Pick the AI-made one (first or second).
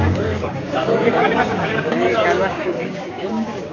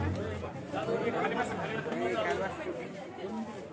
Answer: first